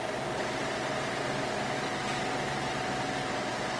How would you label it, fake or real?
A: real